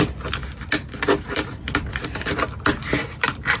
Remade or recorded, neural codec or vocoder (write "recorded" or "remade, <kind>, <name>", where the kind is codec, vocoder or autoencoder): recorded